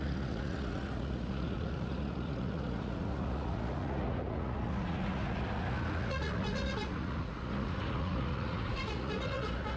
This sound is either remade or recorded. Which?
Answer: remade